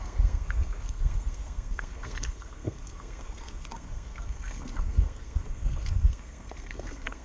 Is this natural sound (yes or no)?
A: no